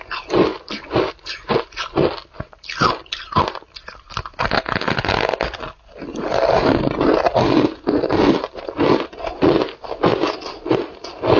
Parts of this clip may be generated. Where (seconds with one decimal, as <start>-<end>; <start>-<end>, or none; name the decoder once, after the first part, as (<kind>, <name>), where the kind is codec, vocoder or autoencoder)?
none